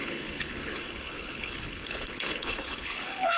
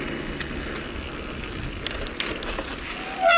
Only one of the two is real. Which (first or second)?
second